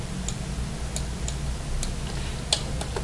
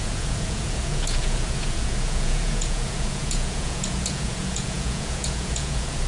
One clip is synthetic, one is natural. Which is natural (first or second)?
first